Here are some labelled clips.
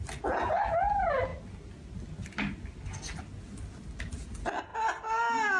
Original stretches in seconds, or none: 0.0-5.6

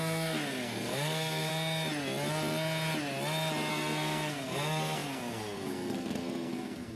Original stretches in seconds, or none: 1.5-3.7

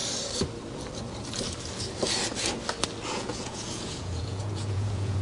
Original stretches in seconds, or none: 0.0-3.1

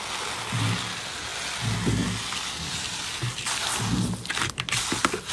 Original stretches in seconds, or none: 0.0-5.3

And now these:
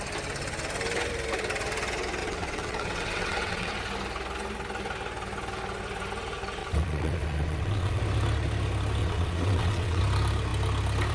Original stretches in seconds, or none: 0.0-2.2; 3.7-6.6; 8.0-9.0; 10.0-11.1

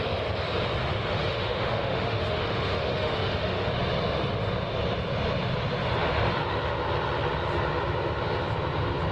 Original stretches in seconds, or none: 0.0-0.8; 3.7-9.1

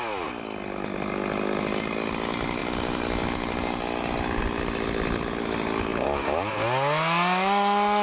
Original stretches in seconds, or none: 0.0-5.9; 6.5-8.0